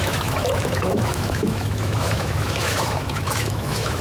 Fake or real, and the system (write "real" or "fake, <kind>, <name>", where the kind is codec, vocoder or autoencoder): fake, autoencoder, DAC-VAE